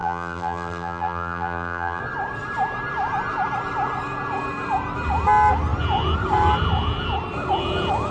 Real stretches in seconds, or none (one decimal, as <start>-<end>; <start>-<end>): 2.0-8.1